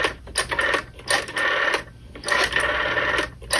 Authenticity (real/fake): real